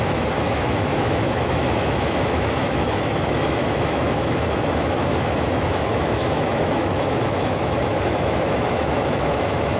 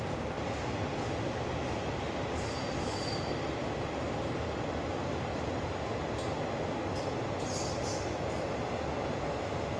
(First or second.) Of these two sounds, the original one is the second